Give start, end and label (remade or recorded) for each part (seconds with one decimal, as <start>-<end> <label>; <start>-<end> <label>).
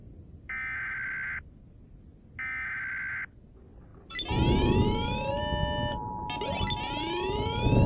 0.0-7.9 recorded